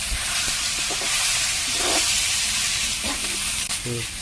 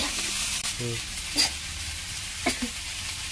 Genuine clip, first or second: second